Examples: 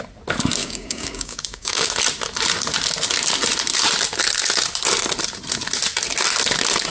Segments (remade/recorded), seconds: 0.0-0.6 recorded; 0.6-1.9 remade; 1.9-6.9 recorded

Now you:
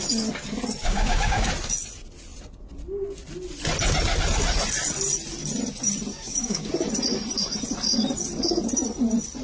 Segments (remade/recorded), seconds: 0.0-0.8 recorded; 0.8-1.5 remade; 1.5-6.1 recorded; 6.1-6.7 remade; 6.7-9.4 recorded

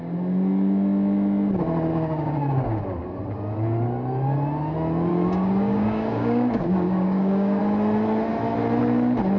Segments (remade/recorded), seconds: 0.0-1.9 recorded; 1.9-2.8 remade; 2.8-5.1 recorded; 5.1-7.6 remade; 7.6-9.4 recorded

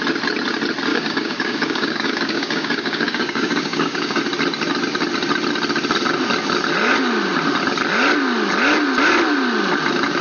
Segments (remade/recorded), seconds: 0.0-0.9 recorded; 0.9-4.2 remade; 4.2-10.2 recorded